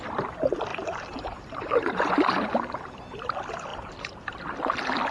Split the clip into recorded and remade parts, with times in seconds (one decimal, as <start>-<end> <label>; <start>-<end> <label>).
0.0-0.7 recorded; 0.7-2.5 remade; 2.5-3.7 recorded; 3.7-4.4 remade; 4.4-5.1 recorded